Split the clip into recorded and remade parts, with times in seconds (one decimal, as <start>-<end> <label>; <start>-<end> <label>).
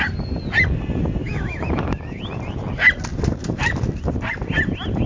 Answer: 0.0-1.2 recorded; 1.2-2.2 remade; 2.2-5.1 recorded